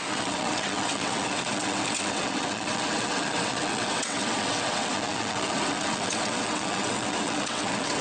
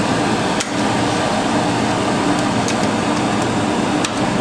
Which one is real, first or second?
second